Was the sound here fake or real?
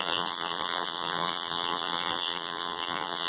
fake